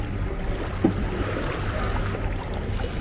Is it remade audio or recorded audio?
recorded